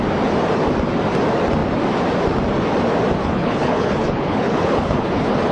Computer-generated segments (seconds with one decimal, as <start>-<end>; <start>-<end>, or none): 3.2-5.5